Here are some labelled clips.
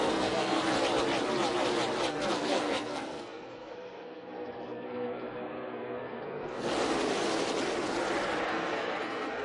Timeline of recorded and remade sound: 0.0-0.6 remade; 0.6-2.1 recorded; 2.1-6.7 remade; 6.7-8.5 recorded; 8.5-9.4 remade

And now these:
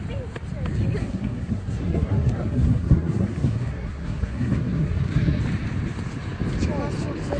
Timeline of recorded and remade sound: 0.0-1.0 recorded; 1.0-5.4 remade; 5.4-7.4 recorded

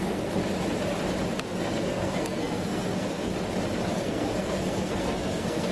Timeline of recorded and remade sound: 0.0-0.4 remade; 0.4-1.4 recorded; 1.4-3.3 remade; 3.3-3.9 recorded; 3.9-5.7 remade

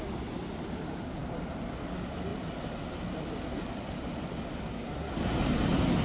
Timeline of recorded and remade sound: 0.0-4.6 recorded; 4.6-5.1 remade; 5.1-6.0 recorded